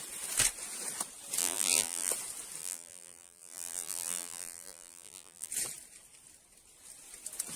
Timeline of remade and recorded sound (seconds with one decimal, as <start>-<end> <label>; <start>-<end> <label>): 0.0-1.4 recorded; 1.4-2.1 remade; 2.1-2.6 recorded; 2.6-5.5 remade; 5.5-7.6 recorded